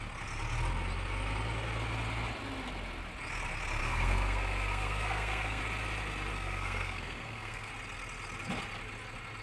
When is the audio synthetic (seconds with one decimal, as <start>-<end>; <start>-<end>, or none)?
3.8-5.6; 6.3-7.7